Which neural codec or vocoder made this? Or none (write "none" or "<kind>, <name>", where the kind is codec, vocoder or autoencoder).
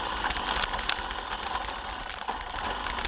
none